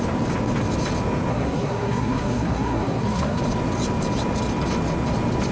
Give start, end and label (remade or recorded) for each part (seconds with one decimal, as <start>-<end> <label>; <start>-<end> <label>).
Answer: 0.0-1.3 recorded; 1.3-3.4 remade; 3.4-5.5 recorded